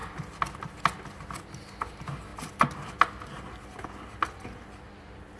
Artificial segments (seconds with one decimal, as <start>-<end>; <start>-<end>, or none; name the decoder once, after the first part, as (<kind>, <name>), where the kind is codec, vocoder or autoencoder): none